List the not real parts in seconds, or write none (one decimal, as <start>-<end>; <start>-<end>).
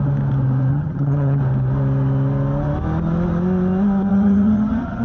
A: 0.7-1.4; 4.1-5.0